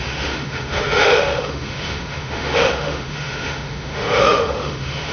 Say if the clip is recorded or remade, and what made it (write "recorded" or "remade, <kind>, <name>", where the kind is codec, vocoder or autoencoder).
remade, autoencoder, DAC-VAE